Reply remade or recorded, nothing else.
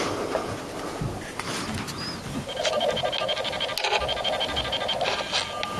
recorded